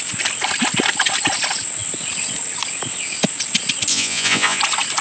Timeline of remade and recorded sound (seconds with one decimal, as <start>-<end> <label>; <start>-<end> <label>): 0.0-3.9 recorded; 3.9-4.6 remade; 4.6-5.0 recorded